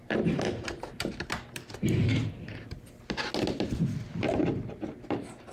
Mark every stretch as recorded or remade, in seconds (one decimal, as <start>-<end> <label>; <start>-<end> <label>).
0.0-2.1 remade; 2.1-5.5 recorded